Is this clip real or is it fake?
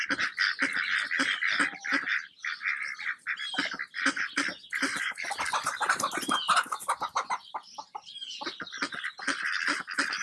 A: real